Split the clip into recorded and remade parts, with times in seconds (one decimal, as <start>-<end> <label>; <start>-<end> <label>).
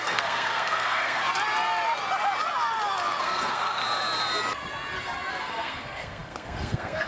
0.0-1.2 remade; 1.2-3.2 recorded; 3.2-3.8 remade; 3.8-5.3 recorded; 5.3-7.1 remade